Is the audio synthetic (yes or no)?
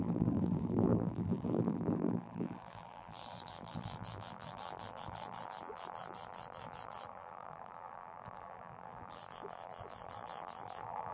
yes